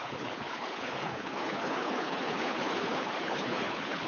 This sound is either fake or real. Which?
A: fake